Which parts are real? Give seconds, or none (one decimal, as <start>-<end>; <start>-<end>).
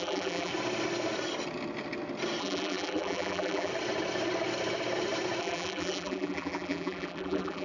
0.5-2.4; 3.7-5.4